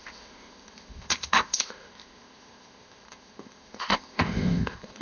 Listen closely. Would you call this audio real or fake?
fake